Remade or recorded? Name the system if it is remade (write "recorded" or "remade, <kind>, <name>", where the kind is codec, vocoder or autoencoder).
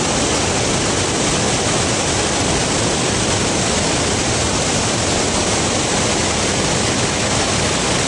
recorded